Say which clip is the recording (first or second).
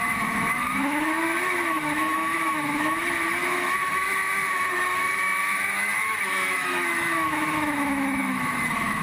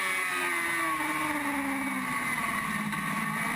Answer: second